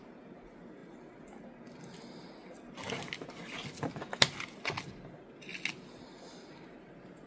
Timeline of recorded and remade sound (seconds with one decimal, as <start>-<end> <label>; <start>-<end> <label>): 0.0-7.3 recorded